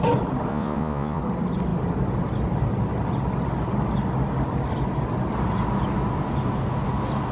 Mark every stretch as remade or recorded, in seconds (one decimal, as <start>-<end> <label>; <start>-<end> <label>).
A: 0.0-0.5 recorded; 0.5-1.2 remade; 1.2-7.3 recorded